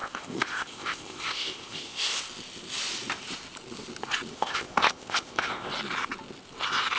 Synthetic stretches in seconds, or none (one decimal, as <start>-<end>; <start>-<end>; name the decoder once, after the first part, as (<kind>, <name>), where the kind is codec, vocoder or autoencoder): 0.0-2.2 (codec, ZipCodec); 4.3-5.7